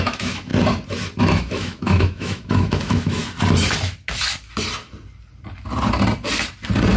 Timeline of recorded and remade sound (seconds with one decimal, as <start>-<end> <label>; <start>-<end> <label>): 0.0-0.5 remade; 0.5-1.2 recorded; 1.2-3.2 remade; 3.2-7.0 recorded